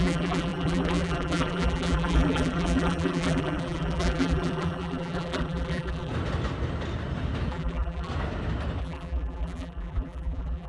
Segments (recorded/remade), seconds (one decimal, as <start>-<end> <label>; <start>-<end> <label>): 0.0-6.1 remade; 6.1-7.5 recorded; 7.5-8.1 remade; 8.1-8.8 recorded; 8.8-10.7 remade